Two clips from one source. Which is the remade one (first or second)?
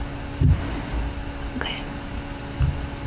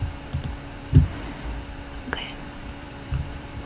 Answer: second